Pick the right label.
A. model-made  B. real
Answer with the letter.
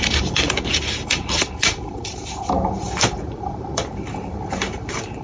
A